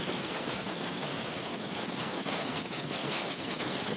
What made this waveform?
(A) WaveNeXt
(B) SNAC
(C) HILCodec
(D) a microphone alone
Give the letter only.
B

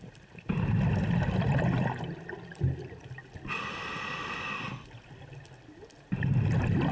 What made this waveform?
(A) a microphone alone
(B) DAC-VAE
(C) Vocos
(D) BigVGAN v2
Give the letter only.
A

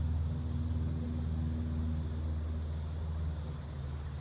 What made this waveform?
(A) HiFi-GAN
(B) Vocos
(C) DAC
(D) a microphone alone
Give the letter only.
D